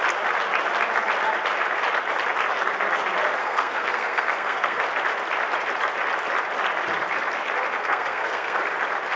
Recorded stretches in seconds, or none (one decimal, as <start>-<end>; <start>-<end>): 0.0-3.4; 4.8-7.8; 8.6-9.2

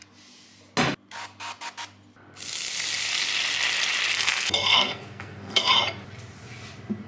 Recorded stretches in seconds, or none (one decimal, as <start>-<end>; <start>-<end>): 0.0-4.1; 5.7-7.1

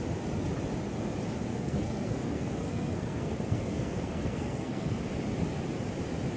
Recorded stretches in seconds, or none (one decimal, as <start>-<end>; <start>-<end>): 0.0-1.5; 5.0-6.4

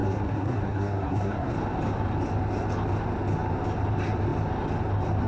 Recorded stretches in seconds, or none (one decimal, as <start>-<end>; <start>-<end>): 1.5-5.3

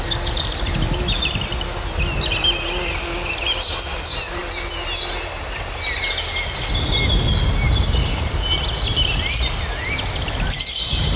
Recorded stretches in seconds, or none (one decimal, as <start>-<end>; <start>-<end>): 0.0-11.2

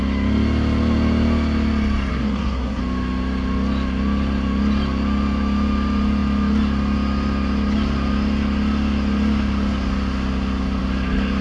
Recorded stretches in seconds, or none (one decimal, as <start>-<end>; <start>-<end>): 0.0-2.1; 2.8-11.4

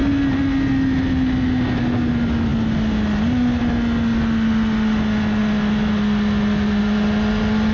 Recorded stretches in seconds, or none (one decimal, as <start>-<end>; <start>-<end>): 0.0-7.7